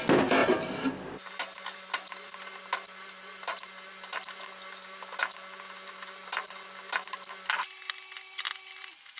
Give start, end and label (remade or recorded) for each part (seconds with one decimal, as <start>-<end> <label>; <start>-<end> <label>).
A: 0.0-9.2 recorded